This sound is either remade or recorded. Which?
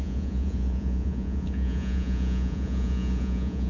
remade